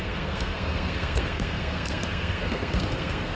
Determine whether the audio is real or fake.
fake